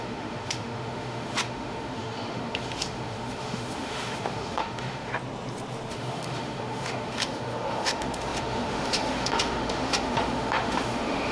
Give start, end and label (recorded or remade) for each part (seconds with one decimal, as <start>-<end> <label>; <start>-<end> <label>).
0.0-5.1 remade; 5.1-5.9 recorded; 5.9-11.3 remade

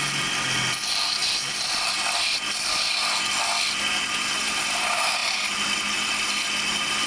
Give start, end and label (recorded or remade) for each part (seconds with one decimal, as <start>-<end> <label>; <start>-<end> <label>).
0.0-1.2 recorded; 1.2-4.6 remade; 4.6-5.2 recorded; 5.2-5.8 remade; 5.8-7.1 recorded

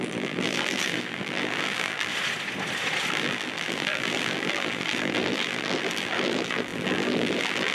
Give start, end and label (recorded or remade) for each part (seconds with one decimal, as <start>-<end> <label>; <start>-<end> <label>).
0.0-2.1 remade; 2.1-3.1 recorded; 3.1-7.7 remade

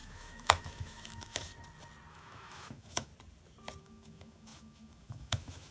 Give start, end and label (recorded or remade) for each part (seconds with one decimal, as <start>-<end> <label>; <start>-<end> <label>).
0.0-1.5 remade; 1.5-2.1 recorded; 2.1-3.1 remade; 3.1-3.8 recorded; 3.8-5.7 remade

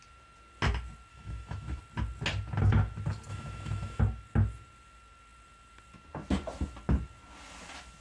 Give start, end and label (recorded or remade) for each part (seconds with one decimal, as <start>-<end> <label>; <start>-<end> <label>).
0.0-1.1 recorded; 1.1-1.8 remade; 1.8-3.3 recorded; 3.3-4.0 remade; 4.0-8.0 recorded